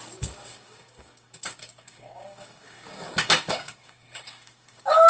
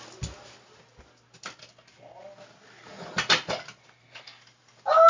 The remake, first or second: first